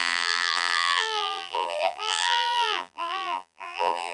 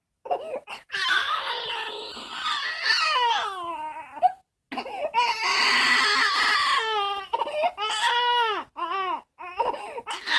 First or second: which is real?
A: second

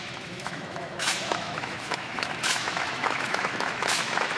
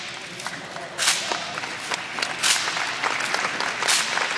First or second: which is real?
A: second